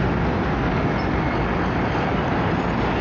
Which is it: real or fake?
real